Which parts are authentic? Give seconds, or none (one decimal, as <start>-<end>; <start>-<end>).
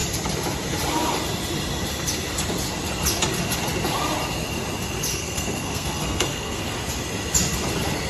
0.0-5.1; 6.6-8.1